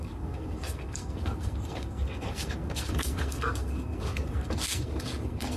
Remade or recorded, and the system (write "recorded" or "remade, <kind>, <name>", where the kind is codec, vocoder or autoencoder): remade, codec, SNAC